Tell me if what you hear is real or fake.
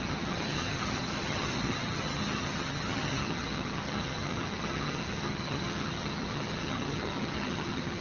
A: fake